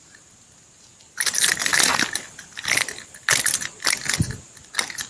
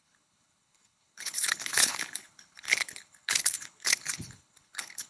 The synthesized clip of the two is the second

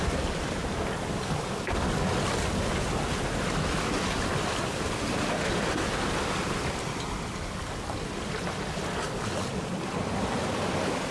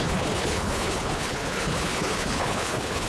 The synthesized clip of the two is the second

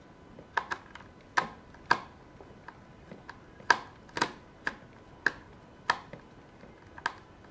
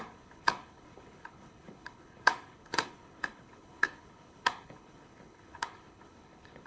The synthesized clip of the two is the second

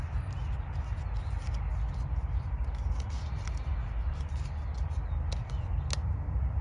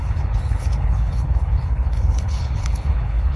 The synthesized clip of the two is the second